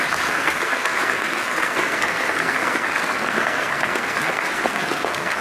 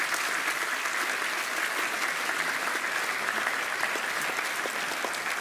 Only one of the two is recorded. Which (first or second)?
second